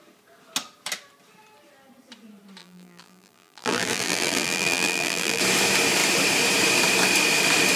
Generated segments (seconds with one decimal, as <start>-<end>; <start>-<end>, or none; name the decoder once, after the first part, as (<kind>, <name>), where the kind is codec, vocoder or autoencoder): 2.6-5.4 (vocoder, BigVGAN v2)